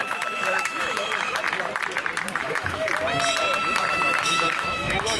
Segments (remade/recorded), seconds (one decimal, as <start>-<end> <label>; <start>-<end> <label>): 0.0-1.4 remade; 1.4-2.4 recorded; 2.4-2.9 remade; 2.9-3.8 recorded; 3.8-5.2 remade